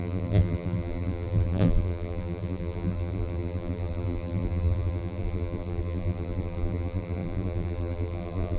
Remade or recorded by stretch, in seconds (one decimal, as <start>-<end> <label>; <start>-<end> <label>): 0.0-8.6 remade

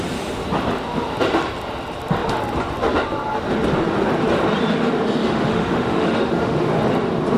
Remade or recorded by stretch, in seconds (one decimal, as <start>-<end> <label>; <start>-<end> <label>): 0.0-5.2 recorded; 5.2-6.7 remade; 6.7-7.4 recorded

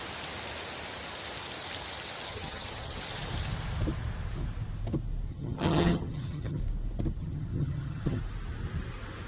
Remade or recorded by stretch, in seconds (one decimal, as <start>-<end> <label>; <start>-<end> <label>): 0.0-2.3 recorded; 2.3-3.0 remade; 3.0-5.3 recorded; 5.3-6.6 remade; 6.6-7.2 recorded; 7.2-8.2 remade; 8.2-9.3 recorded

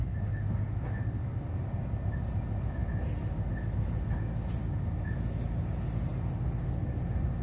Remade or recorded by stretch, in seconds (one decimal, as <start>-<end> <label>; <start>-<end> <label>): 0.0-7.4 recorded

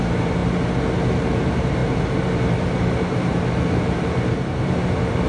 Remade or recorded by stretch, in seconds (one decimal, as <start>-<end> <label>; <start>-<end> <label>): 0.0-0.4 remade; 0.4-1.2 recorded; 1.2-5.3 remade

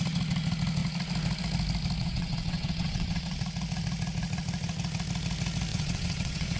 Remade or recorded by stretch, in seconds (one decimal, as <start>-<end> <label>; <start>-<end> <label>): 0.0-2.0 recorded; 2.0-3.4 remade; 3.4-5.7 recorded; 5.7-6.6 remade